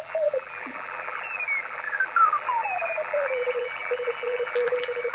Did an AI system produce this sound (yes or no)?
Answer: yes